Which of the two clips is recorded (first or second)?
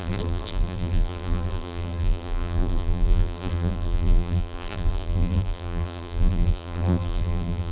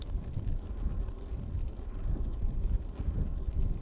second